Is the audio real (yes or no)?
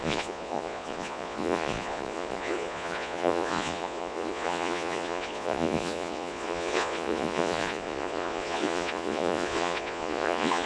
no